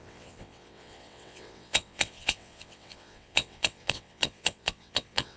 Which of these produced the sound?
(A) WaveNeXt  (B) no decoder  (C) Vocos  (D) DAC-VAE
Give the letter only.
A